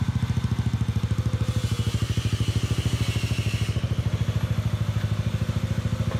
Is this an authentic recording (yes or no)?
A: yes